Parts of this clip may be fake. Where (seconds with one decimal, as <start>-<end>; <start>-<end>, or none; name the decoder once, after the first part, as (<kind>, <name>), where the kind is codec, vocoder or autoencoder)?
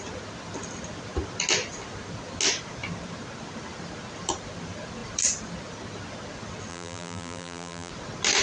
6.7-7.9 (vocoder, BigVGAN v2)